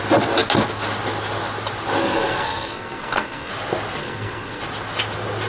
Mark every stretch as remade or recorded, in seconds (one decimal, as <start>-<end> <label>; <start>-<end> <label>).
0.0-2.0 recorded; 2.0-3.5 remade; 3.5-4.0 recorded; 4.0-4.6 remade; 4.6-5.5 recorded